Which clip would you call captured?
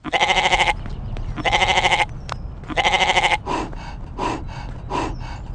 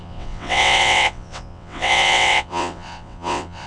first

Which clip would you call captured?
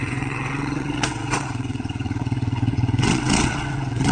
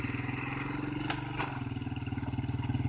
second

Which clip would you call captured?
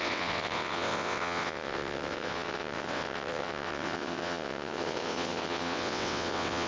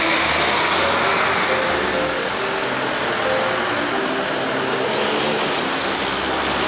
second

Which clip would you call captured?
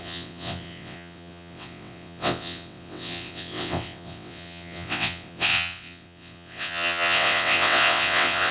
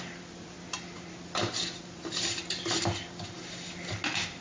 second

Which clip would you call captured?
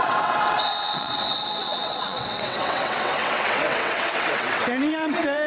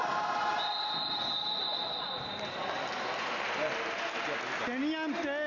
second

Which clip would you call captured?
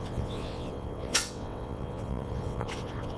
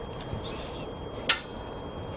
second